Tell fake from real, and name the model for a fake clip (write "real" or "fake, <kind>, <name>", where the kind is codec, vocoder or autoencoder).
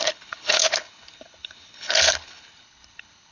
fake, codec, HILCodec